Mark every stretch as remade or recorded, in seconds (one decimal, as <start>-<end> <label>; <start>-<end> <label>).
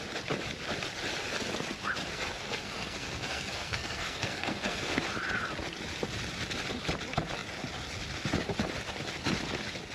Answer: 0.0-2.0 recorded; 2.0-5.0 remade; 5.0-9.9 recorded